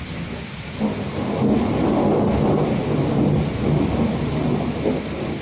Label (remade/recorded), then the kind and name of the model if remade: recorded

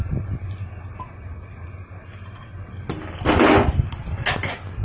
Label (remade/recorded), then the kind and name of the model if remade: recorded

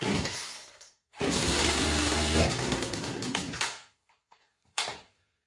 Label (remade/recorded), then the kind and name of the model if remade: remade, codec, SNAC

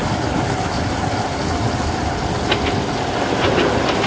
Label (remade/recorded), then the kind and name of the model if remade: recorded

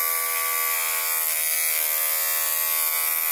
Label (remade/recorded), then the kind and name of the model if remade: recorded